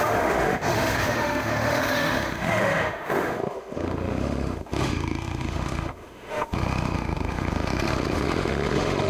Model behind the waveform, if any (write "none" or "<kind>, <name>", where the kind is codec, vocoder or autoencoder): autoencoder, DAC-VAE